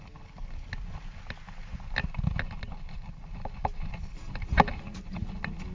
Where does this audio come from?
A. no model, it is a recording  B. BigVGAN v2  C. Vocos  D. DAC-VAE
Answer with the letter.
A